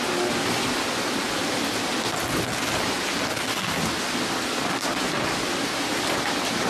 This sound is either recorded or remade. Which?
recorded